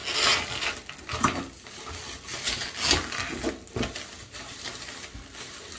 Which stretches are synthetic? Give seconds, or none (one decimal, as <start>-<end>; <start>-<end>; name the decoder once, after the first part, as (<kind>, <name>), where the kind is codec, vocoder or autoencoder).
none